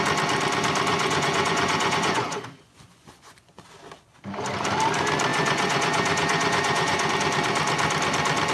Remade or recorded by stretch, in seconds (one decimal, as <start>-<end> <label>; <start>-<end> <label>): 0.0-0.9 recorded; 0.9-3.6 remade; 3.6-5.3 recorded; 5.3-7.1 remade; 7.1-8.5 recorded